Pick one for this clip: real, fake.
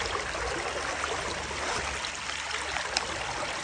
real